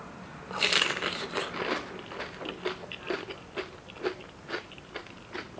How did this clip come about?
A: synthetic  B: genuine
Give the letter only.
A